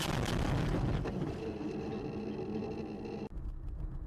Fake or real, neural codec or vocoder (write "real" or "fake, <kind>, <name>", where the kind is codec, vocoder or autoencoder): real